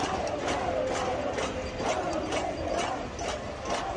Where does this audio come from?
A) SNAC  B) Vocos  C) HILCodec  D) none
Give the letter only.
D